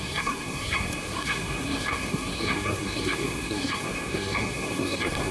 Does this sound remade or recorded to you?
remade